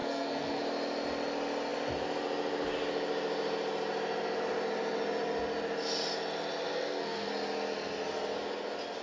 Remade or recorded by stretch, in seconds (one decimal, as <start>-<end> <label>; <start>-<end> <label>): 0.0-0.6 remade; 0.6-6.7 recorded; 6.7-7.3 remade; 7.3-9.0 recorded